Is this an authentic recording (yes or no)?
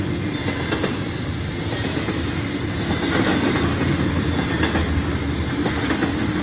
yes